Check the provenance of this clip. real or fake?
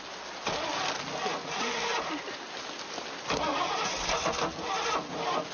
real